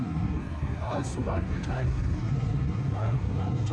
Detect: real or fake fake